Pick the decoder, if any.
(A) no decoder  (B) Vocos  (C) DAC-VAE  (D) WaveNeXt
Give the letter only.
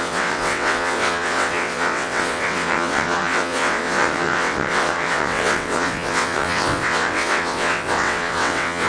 D